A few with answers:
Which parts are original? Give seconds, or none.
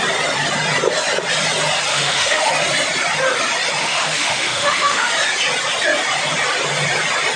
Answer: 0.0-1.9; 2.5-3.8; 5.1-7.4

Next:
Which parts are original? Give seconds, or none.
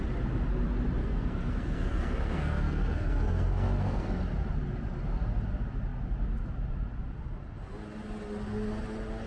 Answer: 0.0-1.0; 4.2-9.3